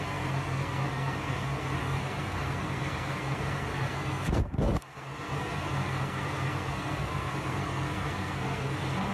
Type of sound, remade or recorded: remade